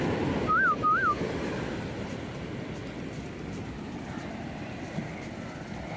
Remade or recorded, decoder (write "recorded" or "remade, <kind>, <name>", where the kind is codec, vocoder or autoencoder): recorded